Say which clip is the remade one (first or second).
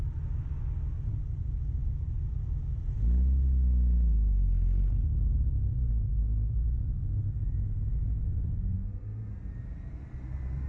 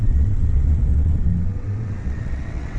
second